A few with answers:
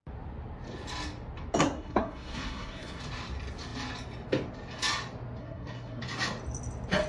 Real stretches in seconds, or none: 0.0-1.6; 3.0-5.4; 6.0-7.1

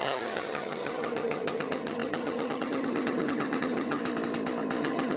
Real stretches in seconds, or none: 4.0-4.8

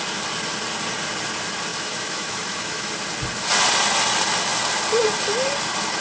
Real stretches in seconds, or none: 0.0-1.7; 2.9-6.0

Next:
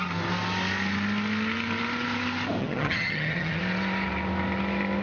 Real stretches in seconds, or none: 0.0-2.6; 3.6-5.0

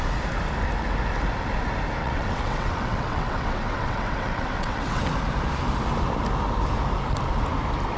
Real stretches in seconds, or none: 0.0-2.0; 5.0-8.0

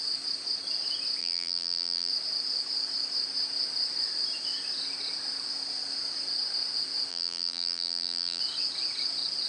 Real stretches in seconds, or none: 0.0-1.2; 2.1-7.1; 8.4-9.5

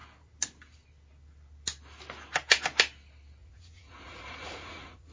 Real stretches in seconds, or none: 0.0-3.4